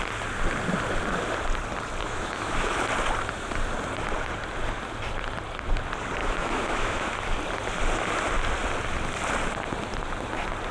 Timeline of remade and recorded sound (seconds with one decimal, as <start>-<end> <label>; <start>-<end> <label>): 0.0-2.0 recorded; 2.0-2.7 remade; 2.7-6.2 recorded; 6.2-7.1 remade; 7.1-10.7 recorded